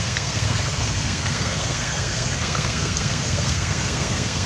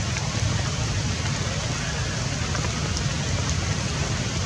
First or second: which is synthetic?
first